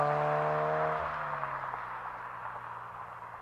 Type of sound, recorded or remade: recorded